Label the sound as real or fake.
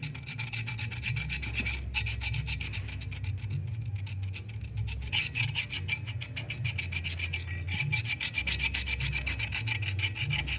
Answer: real